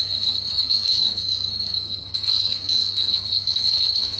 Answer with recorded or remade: remade